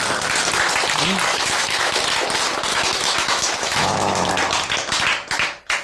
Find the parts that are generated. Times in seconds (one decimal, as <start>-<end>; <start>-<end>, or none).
1.3-2.0; 2.7-4.3